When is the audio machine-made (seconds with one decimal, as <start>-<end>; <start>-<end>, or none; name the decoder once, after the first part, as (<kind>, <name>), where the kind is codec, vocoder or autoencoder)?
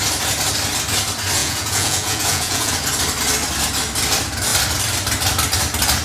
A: 1.4-2.7 (vocoder, Vocos)